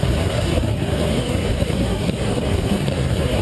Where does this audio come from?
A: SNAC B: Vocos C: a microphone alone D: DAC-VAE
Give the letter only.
A